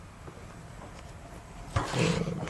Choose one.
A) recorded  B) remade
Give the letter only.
A